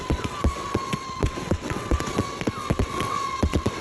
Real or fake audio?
fake